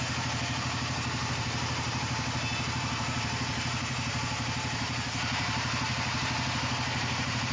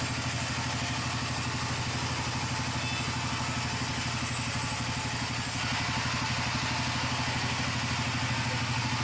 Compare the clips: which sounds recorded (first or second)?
second